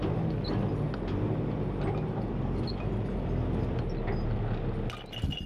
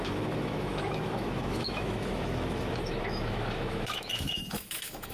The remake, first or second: second